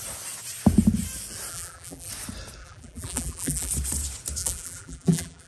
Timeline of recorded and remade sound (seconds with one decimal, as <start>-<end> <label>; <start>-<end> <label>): 0.0-1.5 recorded; 1.5-2.1 remade; 2.1-2.6 recorded; 2.6-3.7 remade; 3.7-4.4 recorded; 4.4-5.5 remade